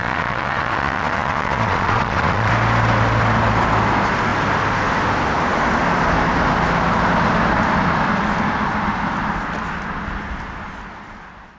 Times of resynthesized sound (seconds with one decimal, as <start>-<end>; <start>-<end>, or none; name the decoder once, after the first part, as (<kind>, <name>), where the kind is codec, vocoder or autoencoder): 0.0-2.5 (vocoder, Vocos)